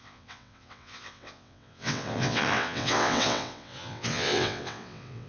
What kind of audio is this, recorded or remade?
remade